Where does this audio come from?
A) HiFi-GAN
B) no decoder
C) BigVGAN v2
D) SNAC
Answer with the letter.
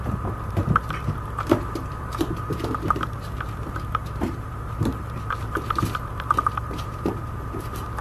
C